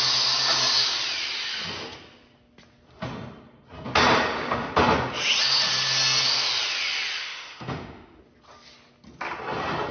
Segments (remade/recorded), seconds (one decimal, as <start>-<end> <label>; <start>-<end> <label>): 0.0-7.2 recorded; 7.2-8.2 remade; 8.2-9.9 recorded